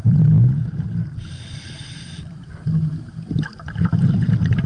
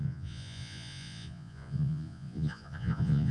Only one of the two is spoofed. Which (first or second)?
second